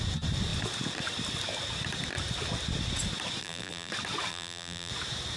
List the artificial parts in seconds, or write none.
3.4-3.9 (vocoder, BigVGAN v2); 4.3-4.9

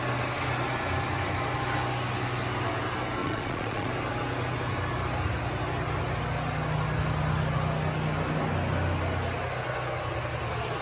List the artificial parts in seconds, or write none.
3.2-3.9 (vocoder, Vocos)